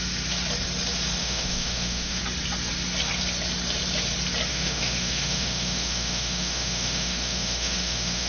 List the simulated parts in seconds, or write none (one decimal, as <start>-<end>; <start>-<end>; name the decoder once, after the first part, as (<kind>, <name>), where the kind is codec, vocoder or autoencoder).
1.2-2.2 (autoencoder, DAC-VAE); 4.5-8.3